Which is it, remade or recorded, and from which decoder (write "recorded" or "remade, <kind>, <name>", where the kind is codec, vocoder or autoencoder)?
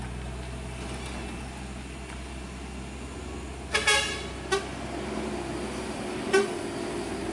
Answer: recorded